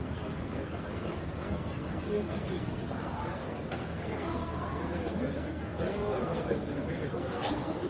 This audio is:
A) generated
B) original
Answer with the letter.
A